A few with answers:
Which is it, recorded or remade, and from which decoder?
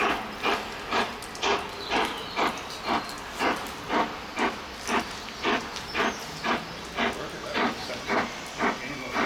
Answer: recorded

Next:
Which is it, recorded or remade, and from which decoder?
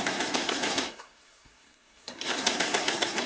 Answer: remade, codec, SNAC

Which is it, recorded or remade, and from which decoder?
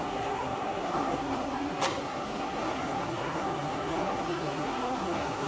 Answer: remade, codec, SNAC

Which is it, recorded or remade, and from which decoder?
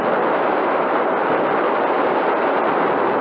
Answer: recorded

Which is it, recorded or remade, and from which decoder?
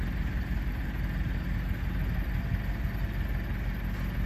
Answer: recorded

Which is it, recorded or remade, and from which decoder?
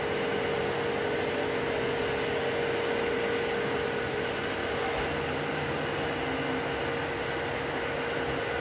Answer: recorded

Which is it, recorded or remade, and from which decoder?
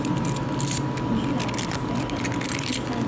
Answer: recorded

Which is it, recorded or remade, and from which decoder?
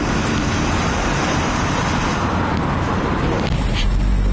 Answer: recorded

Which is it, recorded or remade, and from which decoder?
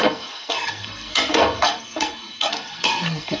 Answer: remade, codec, SNAC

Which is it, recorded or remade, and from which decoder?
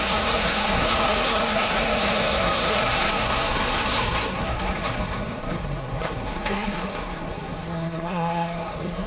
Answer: remade, codec, SNAC